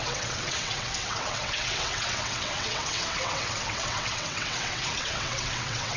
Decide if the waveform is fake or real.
fake